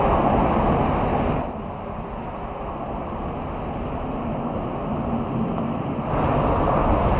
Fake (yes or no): no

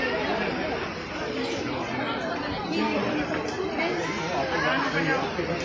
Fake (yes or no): no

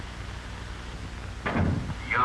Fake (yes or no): no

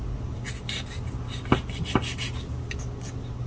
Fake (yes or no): no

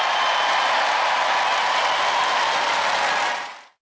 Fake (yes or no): no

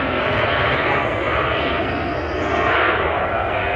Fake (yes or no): yes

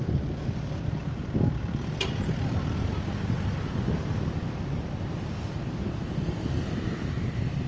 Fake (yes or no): no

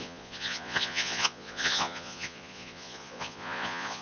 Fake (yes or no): yes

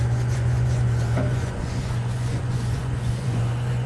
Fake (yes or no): yes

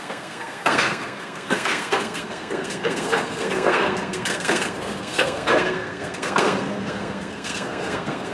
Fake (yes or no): yes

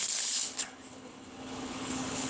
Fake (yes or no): yes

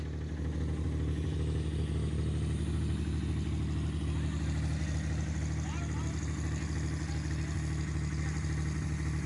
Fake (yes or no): no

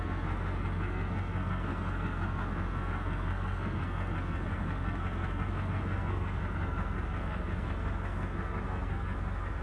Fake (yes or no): yes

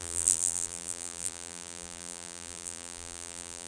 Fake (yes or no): yes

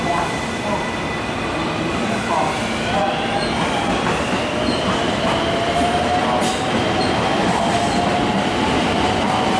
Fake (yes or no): no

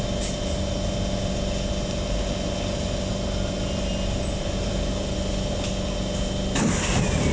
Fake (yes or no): no